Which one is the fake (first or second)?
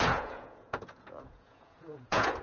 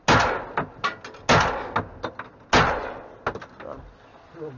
first